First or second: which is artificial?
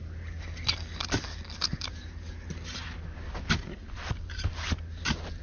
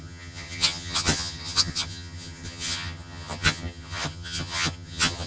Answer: second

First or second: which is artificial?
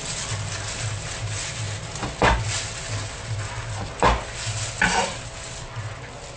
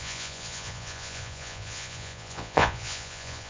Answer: second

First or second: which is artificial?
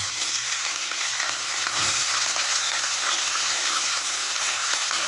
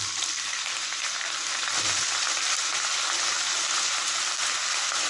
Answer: first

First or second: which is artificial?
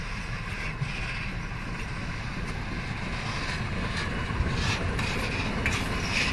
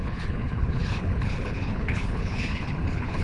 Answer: second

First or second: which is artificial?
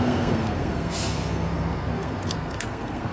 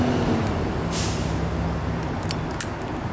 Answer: first